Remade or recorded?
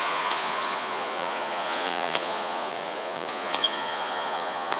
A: remade